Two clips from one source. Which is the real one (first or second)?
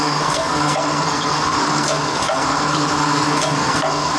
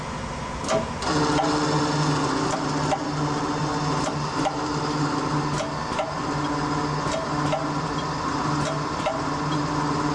second